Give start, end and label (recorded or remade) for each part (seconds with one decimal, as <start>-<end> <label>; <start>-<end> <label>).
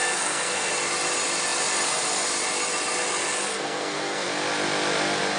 0.0-0.7 remade; 0.7-3.5 recorded; 3.5-4.3 remade; 4.3-5.4 recorded